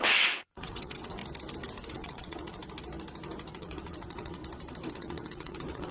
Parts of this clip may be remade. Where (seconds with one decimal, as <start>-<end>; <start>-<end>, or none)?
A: 0.0-1.2; 1.9-2.6; 3.5-4.4; 4.9-5.9